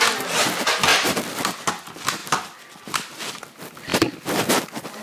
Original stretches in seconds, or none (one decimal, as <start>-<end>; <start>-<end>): 0.0-5.0